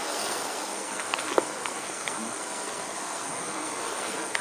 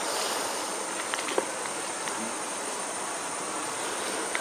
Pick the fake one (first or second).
first